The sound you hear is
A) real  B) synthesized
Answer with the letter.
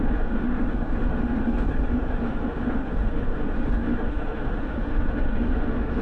B